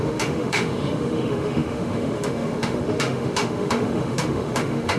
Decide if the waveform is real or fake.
fake